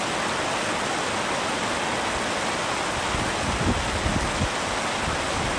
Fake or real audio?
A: real